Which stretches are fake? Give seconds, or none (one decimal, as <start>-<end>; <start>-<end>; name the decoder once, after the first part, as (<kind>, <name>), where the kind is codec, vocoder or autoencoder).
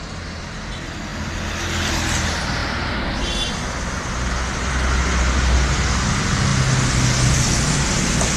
none